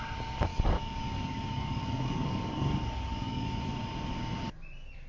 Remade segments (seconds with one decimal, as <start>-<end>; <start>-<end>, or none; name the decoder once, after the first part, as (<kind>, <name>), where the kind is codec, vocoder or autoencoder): 0.5-3.6 (codec, DAC)